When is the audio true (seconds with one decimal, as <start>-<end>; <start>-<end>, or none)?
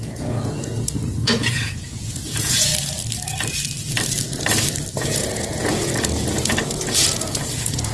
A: 2.7-4.9